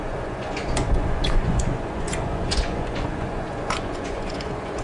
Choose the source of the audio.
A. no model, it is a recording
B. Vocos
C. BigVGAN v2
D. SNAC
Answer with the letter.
B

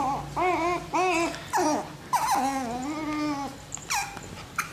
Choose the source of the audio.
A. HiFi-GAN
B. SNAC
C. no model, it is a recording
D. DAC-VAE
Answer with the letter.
C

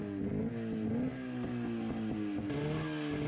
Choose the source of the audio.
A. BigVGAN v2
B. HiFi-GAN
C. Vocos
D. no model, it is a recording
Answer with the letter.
D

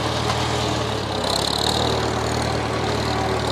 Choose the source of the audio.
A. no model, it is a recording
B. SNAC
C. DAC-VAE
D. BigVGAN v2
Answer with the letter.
A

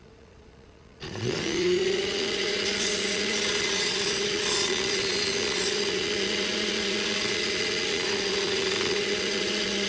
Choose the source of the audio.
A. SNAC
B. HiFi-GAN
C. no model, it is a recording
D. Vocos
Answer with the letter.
D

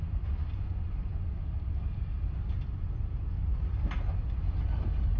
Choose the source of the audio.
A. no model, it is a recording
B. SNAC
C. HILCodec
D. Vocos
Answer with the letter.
A